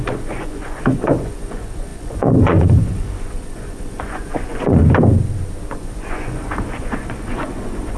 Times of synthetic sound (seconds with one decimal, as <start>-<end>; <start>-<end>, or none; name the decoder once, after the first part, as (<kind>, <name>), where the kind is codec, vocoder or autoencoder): 0.0-4.8 (vocoder, Vocos); 5.7-8.0